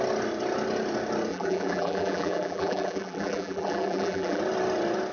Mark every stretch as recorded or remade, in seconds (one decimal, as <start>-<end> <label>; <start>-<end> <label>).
0.0-1.3 recorded; 1.3-4.4 remade; 4.4-5.1 recorded